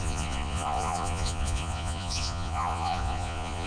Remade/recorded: remade